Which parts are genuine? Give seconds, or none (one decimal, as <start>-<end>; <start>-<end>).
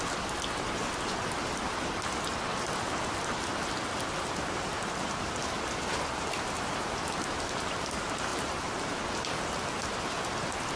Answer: 0.0-8.3; 9.0-10.8